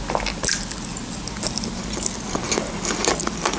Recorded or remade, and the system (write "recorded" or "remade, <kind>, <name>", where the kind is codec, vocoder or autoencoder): recorded